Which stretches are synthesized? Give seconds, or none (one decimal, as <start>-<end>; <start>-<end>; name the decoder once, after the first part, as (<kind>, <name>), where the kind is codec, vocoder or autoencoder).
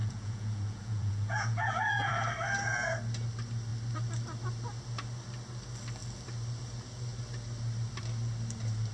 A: 0.0-2.1 (vocoder, Vocos)